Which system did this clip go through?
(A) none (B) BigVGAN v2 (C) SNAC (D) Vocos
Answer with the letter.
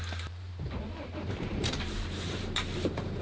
B